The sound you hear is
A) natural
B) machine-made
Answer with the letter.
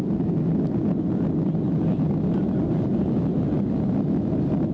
A